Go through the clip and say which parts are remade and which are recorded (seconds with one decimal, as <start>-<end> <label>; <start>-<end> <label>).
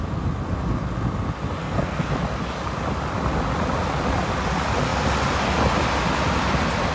0.0-1.6 recorded; 1.6-2.1 remade; 2.1-6.9 recorded